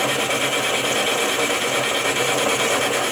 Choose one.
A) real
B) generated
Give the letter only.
A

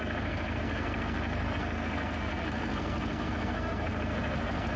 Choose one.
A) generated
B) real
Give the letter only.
A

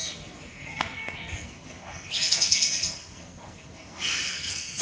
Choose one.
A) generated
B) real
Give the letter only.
A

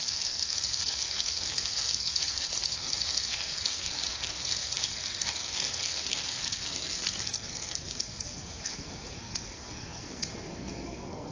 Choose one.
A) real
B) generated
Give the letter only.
B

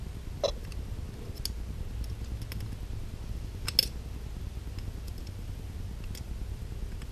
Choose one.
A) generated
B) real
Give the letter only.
B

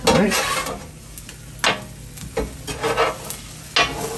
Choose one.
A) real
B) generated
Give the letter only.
A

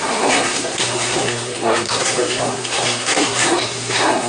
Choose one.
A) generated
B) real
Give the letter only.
A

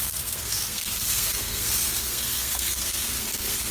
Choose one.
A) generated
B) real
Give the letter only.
A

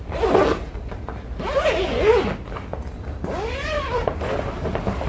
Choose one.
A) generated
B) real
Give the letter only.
B